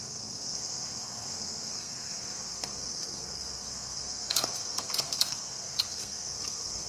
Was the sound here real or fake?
fake